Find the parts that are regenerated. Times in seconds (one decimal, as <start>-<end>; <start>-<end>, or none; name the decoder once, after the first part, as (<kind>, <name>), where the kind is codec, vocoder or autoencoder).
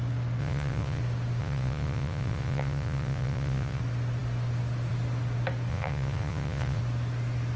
0.4-1.0 (vocoder, Vocos); 1.4-3.8; 5.7-6.8